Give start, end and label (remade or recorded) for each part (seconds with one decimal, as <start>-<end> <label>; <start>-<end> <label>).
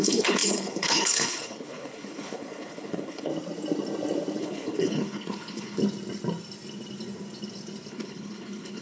0.0-3.3 remade; 3.3-4.4 recorded; 4.4-5.8 remade; 5.8-7.9 recorded; 7.9-8.8 remade